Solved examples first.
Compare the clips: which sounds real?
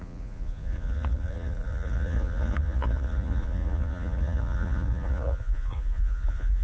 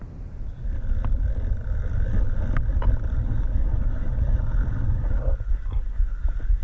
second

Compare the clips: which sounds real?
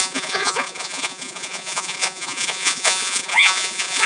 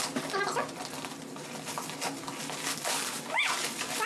second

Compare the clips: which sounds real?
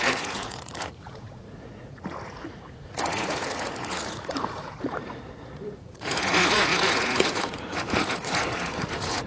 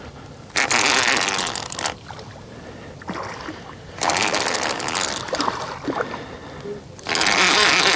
second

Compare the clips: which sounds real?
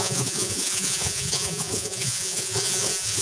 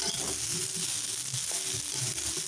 second